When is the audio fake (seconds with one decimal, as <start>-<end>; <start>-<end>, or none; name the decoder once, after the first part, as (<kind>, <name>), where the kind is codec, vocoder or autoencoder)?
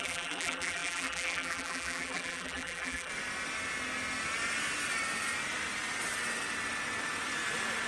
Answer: 0.0-3.1 (vocoder, BigVGAN v2)